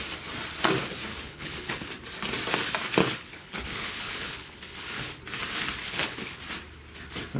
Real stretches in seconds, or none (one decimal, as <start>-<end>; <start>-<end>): 0.0-1.1; 1.9-3.0; 5.2-5.8; 6.4-7.4